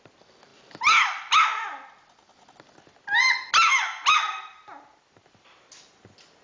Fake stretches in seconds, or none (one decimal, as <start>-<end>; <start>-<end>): none